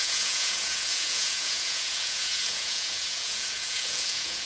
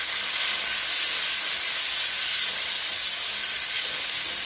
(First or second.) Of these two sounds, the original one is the second